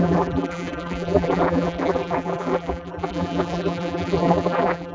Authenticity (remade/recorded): remade